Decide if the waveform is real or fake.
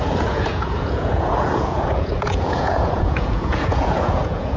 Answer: fake